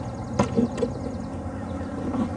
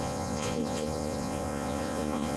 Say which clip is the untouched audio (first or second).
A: first